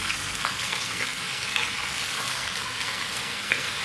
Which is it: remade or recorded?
remade